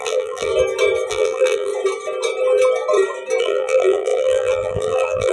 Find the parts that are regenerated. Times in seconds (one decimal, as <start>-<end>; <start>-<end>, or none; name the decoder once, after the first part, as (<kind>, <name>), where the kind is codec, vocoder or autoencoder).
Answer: 0.0-0.5 (vocoder, BigVGAN v2); 1.1-1.7; 3.4-5.3